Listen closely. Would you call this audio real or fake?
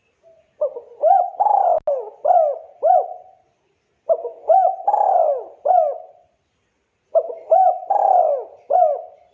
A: real